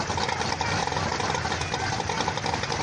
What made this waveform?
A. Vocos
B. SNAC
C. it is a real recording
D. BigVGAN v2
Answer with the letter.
C